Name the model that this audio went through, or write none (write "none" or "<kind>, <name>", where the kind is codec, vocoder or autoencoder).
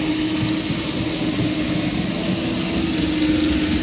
none